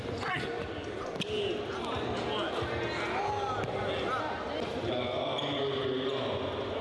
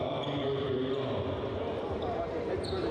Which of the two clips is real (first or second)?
first